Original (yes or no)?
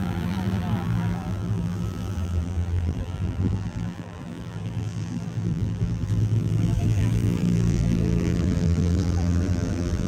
no